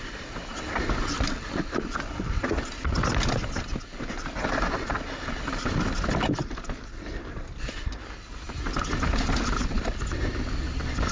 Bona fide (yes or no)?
yes